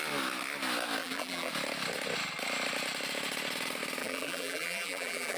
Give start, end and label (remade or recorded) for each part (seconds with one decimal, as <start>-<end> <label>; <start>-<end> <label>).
0.0-1.0 recorded; 1.0-1.5 remade; 1.5-4.0 recorded; 4.0-5.4 remade